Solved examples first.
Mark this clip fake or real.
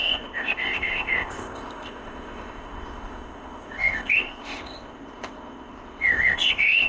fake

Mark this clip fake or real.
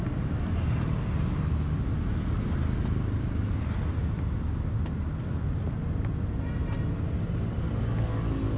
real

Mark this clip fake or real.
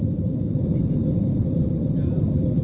real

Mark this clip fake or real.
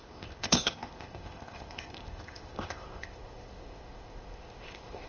fake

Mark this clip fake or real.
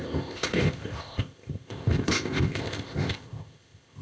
fake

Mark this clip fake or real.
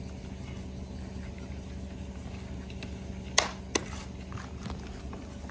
real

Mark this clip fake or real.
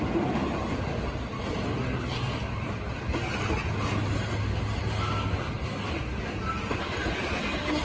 real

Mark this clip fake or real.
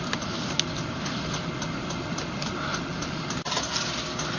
real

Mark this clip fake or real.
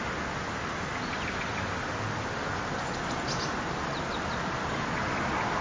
real